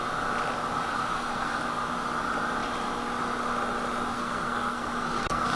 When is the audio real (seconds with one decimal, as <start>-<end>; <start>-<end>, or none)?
0.0-0.9; 1.6-4.1